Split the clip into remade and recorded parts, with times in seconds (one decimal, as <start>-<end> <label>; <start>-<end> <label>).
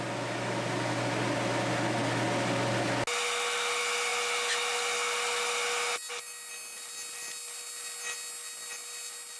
0.0-9.4 recorded